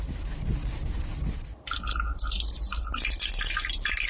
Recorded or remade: recorded